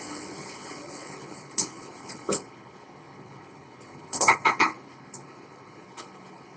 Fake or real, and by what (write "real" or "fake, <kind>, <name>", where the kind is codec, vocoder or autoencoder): fake, codec, HILCodec